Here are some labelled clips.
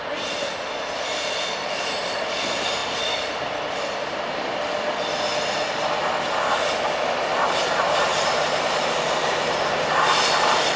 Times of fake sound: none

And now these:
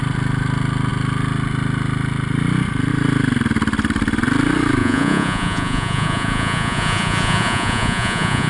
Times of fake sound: 4.8-8.5 (vocoder, Vocos)

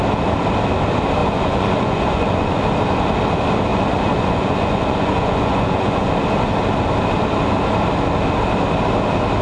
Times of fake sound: 1.2-2.6 (vocoder, Vocos); 3.7-6.1

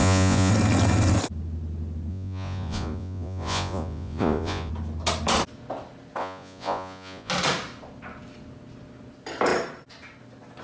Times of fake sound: 0.0-0.5 (vocoder, Vocos); 2.1-4.7; 6.2-7.3

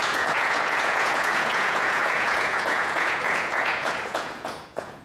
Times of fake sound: 0.0-5.0 (vocoder, Vocos)

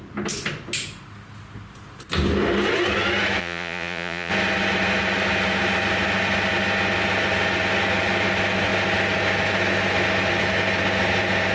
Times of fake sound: 3.4-4.3 (vocoder, Vocos)